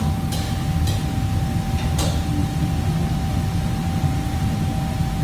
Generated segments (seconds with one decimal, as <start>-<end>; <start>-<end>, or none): 2.4-4.7